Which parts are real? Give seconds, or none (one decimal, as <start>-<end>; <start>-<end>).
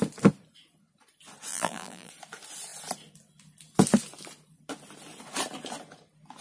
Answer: 0.0-1.5; 2.1-6.4